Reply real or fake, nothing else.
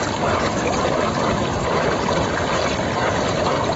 real